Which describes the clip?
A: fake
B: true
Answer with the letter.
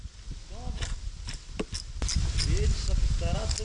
B